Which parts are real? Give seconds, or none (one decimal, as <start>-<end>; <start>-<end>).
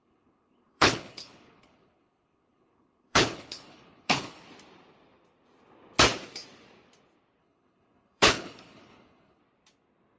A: 4.5-7.4; 9.4-10.2